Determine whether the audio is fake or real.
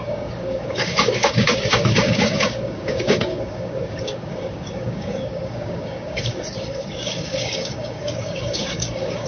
fake